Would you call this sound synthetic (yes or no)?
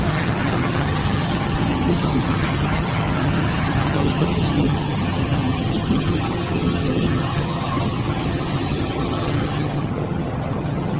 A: yes